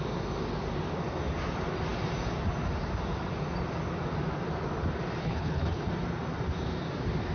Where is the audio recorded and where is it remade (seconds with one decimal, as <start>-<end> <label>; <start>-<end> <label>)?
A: 0.0-5.2 recorded; 5.2-5.9 remade; 5.9-7.3 recorded